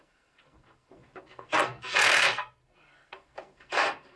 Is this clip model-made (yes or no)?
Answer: yes